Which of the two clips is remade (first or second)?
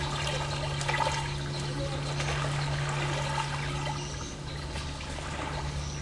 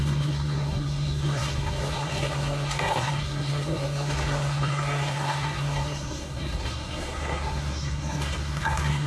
second